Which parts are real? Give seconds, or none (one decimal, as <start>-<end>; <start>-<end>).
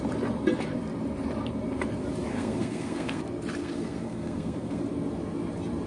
0.0-2.3; 3.2-3.6; 4.8-5.9